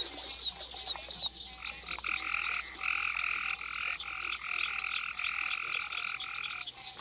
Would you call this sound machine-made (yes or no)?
no